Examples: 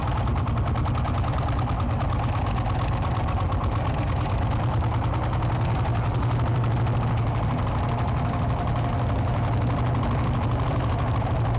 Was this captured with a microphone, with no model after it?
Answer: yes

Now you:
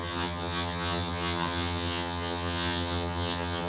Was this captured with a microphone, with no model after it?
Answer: no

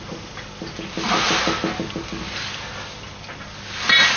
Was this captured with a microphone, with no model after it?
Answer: yes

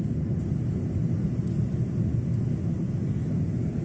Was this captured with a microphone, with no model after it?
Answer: yes